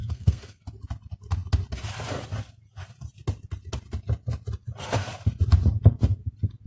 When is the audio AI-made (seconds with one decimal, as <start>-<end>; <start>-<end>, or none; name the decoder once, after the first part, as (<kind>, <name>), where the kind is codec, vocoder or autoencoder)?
0.0-0.6 (codec, SNAC)